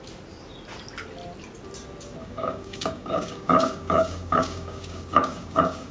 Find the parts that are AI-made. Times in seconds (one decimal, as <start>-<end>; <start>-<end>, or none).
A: 2.2-5.9